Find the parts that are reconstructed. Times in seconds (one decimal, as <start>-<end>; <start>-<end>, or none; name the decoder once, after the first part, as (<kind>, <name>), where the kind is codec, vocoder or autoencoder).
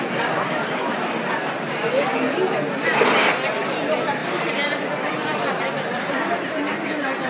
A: 4.2-5.6 (vocoder, BigVGAN v2)